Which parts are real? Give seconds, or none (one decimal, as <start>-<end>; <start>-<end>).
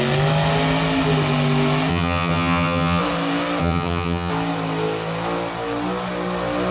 0.0-1.9; 3.0-3.6; 4.3-6.7